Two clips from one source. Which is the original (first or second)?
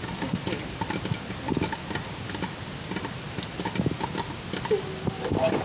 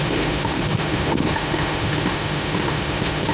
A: first